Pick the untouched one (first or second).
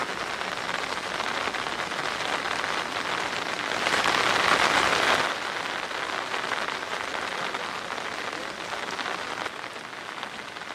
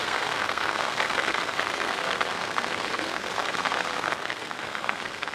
first